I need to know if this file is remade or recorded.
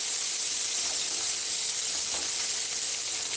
recorded